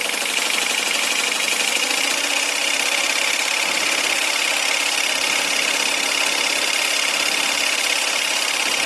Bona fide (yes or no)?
no